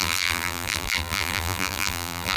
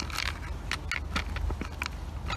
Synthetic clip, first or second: first